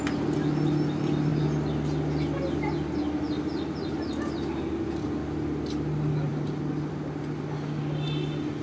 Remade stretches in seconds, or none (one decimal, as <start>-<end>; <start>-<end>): none